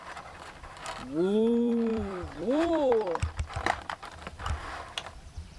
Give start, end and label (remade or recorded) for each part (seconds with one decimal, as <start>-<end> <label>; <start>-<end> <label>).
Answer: 0.0-5.6 remade